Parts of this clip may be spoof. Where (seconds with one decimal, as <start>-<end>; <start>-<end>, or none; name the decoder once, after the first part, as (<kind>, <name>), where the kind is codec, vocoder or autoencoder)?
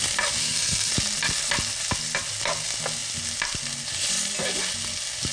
0.4-0.9 (codec, SNAC)